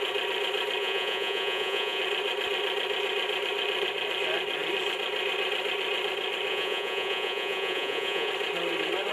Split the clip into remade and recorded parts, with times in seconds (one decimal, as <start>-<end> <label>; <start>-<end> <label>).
0.0-0.8 recorded; 0.8-2.0 remade; 2.0-6.5 recorded; 6.5-8.3 remade; 8.3-9.1 recorded